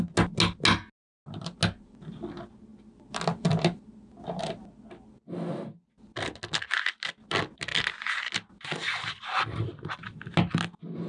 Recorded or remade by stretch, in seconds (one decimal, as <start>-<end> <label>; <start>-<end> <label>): 0.0-8.8 recorded; 8.8-10.3 remade; 10.3-11.1 recorded